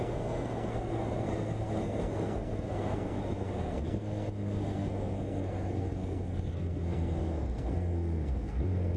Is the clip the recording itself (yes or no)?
no